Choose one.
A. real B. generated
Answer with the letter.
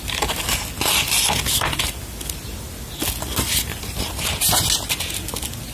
A